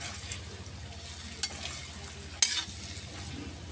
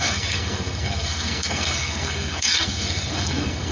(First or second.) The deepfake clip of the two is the second